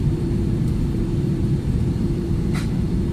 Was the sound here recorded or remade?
remade